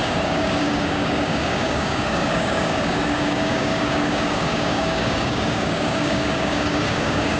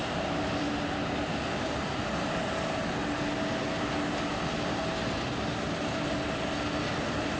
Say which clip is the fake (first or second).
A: first